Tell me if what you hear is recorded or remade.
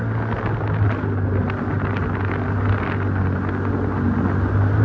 recorded